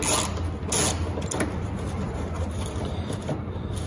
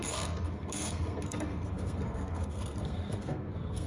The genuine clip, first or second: first